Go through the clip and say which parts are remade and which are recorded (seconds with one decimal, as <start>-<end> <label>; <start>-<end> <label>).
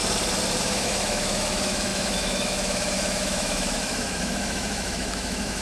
0.0-0.6 recorded; 0.6-5.6 remade